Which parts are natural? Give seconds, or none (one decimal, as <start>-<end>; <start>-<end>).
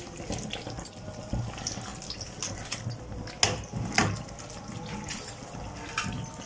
0.0-6.5